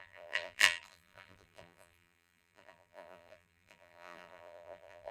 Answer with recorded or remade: remade